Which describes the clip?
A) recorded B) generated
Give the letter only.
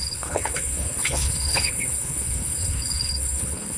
B